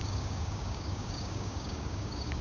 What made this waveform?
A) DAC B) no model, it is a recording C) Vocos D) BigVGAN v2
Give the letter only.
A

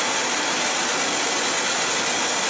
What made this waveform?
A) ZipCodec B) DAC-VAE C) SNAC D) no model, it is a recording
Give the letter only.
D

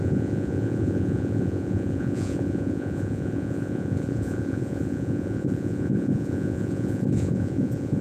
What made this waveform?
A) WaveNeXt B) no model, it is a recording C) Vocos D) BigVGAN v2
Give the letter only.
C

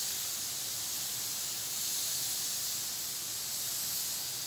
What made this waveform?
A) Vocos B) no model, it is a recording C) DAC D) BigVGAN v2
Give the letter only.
B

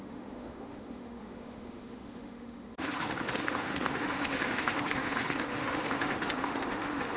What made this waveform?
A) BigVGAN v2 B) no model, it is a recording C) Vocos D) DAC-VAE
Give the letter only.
D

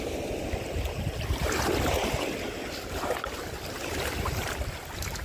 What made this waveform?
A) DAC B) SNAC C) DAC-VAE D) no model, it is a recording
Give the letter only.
D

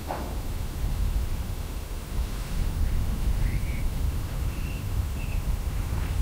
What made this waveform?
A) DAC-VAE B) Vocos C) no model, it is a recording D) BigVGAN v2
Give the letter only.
A